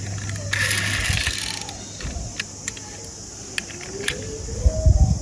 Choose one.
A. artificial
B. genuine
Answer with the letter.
B